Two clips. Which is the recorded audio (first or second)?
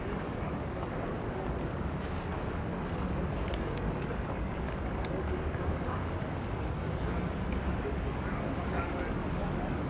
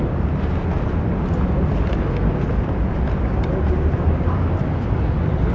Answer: second